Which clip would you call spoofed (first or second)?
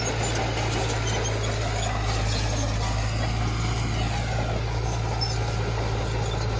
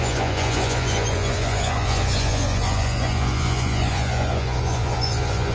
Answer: second